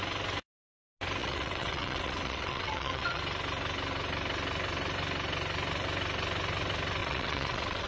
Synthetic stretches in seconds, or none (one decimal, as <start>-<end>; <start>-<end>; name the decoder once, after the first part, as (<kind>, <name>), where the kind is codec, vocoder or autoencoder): 1.2-3.2 (vocoder, WaveNeXt); 7.0-7.9